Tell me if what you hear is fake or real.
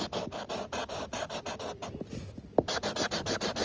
real